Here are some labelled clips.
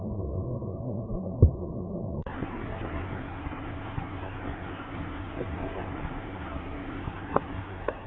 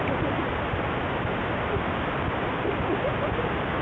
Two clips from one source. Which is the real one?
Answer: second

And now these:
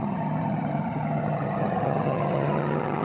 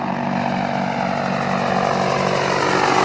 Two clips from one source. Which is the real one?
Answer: second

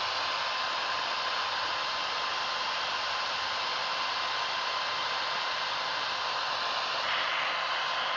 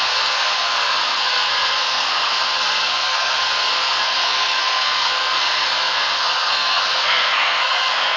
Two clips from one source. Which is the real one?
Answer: first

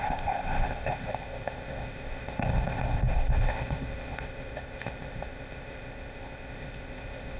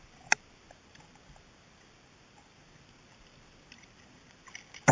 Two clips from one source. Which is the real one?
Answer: second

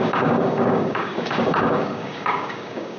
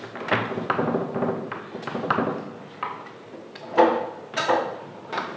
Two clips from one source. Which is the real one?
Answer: second